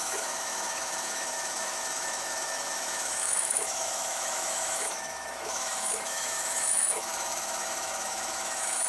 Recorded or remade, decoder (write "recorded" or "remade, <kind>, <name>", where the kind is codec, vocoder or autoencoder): remade, autoencoder, DAC-VAE